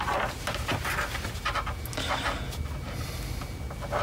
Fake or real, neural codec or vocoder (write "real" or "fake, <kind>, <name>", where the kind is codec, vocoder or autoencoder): real